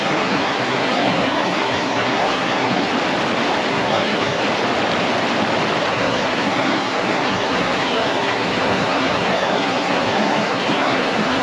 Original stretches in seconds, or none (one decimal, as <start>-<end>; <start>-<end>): 2.9-3.7; 4.4-5.9

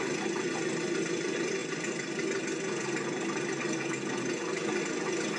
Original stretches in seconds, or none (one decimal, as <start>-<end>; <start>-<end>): 0.0-5.4

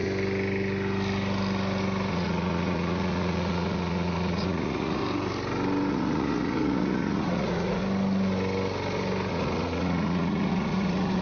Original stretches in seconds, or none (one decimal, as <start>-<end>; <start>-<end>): 0.0-2.1; 5.0-5.9; 7.8-9.3

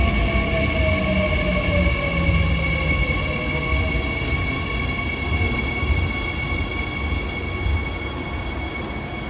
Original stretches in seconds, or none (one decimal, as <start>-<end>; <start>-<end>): 0.0-9.3

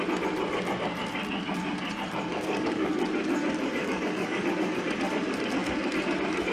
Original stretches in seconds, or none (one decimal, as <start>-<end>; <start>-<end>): 0.0-2.3; 2.9-3.8; 4.8-6.5

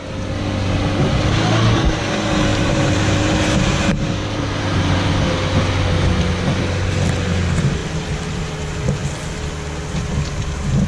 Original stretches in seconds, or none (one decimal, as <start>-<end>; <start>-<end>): 0.0-2.5; 5.1-10.9

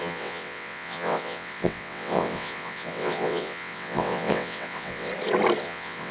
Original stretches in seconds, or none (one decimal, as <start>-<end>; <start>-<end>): 5.1-5.6

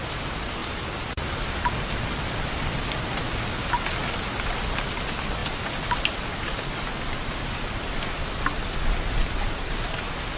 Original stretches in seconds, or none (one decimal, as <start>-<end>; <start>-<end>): 0.0-0.6; 3.2-9.2; 9.7-10.4